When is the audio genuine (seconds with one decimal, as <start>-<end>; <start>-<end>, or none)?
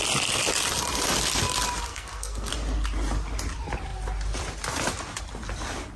0.0-1.9; 2.5-6.0